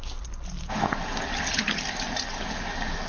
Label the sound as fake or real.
real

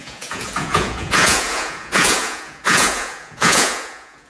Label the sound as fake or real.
fake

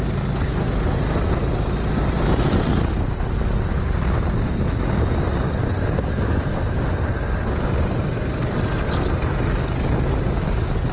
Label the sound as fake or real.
real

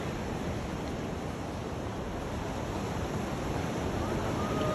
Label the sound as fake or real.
real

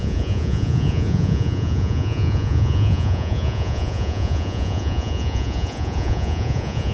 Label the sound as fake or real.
fake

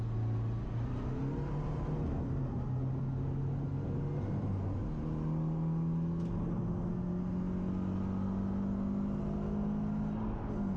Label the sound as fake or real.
real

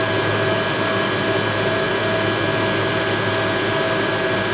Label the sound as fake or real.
real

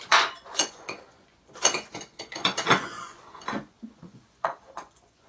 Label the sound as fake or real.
fake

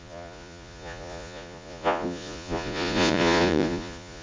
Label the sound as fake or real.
fake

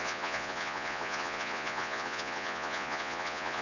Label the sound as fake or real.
fake